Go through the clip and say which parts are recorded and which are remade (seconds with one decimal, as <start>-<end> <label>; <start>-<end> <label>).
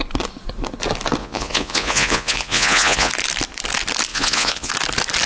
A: 0.0-1.2 recorded; 1.2-3.1 remade; 3.1-4.1 recorded; 4.1-4.7 remade; 4.7-5.3 recorded